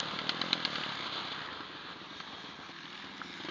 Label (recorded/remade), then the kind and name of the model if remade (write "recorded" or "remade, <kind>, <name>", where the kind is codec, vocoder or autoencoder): recorded